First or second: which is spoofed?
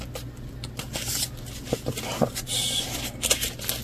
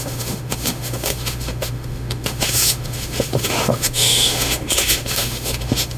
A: second